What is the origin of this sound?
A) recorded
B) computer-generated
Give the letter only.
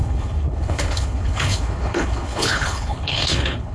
B